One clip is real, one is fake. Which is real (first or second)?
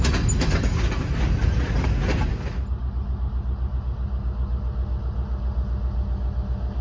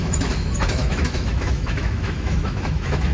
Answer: first